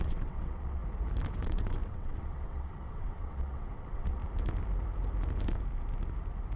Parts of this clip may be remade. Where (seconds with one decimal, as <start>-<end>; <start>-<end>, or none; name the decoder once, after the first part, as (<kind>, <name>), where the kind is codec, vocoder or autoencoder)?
0.0-0.8 (vocoder, WaveNeXt); 1.3-4.2